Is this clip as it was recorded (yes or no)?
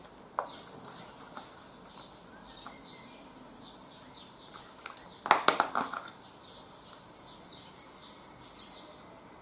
yes